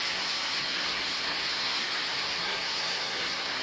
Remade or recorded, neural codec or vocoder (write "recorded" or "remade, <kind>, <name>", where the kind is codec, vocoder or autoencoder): remade, codec, SNAC